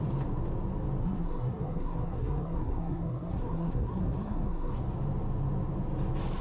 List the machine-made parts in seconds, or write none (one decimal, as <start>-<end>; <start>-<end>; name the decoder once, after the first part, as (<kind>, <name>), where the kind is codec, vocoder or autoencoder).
1.0-4.8 (codec, SNAC)